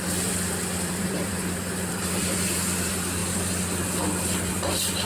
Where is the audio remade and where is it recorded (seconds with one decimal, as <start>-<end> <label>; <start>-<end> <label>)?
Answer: 0.0-3.2 remade; 3.2-4.5 recorded; 4.5-5.1 remade